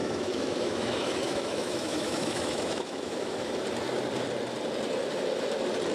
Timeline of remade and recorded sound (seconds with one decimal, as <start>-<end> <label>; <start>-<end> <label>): 0.0-3.5 remade; 3.5-5.9 recorded